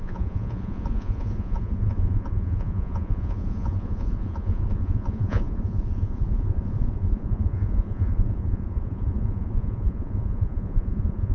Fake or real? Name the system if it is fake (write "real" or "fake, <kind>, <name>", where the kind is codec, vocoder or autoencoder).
fake, vocoder, Vocos